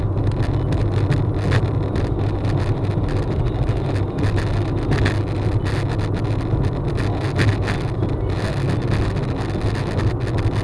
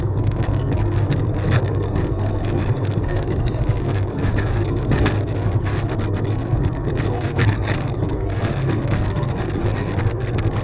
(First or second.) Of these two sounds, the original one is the first